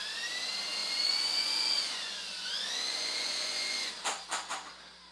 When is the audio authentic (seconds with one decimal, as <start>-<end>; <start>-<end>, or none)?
0.0-0.8; 3.9-5.1